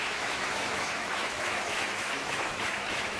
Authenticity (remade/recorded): remade